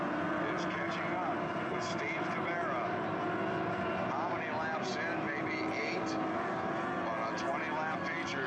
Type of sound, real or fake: real